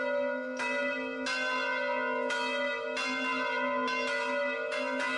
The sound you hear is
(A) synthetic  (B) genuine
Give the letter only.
B